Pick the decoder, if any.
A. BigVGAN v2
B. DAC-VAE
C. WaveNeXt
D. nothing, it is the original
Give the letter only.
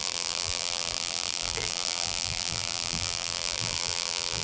A